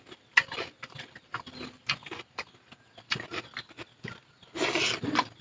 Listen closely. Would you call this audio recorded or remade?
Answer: recorded